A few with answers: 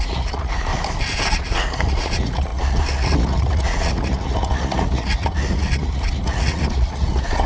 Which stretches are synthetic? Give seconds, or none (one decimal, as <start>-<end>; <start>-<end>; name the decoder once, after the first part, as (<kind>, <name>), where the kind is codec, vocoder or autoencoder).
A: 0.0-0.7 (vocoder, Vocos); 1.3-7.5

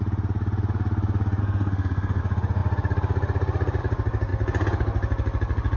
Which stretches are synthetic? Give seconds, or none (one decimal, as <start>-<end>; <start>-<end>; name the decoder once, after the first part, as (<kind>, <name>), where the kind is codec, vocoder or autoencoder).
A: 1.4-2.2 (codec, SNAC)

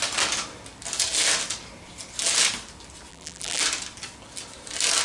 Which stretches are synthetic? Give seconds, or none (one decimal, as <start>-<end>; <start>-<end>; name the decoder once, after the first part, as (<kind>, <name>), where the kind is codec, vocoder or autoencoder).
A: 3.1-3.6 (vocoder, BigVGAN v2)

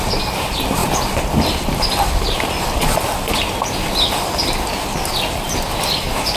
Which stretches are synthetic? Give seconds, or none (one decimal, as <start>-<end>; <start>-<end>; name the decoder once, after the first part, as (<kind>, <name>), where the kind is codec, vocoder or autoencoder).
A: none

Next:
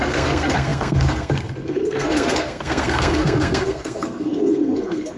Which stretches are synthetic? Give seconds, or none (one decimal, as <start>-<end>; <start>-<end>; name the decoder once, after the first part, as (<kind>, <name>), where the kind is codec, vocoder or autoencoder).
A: 0.0-5.2 (codec, SNAC)

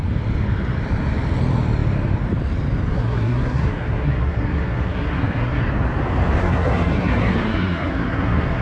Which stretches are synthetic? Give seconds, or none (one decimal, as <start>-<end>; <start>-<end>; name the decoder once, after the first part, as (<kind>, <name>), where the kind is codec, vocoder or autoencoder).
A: 2.9-5.6 (codec, SNAC); 6.4-8.6

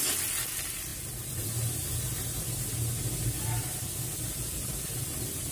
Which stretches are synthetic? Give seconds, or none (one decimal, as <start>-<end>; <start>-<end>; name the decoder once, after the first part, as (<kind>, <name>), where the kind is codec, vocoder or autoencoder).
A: none

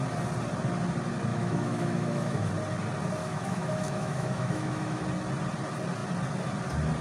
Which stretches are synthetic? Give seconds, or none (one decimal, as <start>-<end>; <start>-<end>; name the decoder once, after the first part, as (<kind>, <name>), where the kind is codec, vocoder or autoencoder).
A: 1.3-2.5 (autoencoder, DAC-VAE); 3.2-5.0